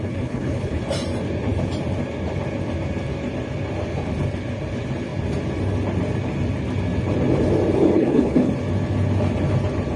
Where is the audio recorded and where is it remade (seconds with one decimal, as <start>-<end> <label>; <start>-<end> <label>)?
0.0-0.8 remade; 0.8-7.8 recorded; 7.8-8.5 remade; 8.5-10.0 recorded